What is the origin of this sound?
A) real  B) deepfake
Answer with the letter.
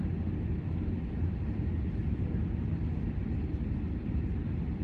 A